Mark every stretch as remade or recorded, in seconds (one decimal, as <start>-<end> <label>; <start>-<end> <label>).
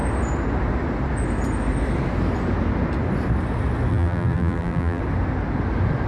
0.0-3.9 recorded; 3.9-5.0 remade; 5.0-6.1 recorded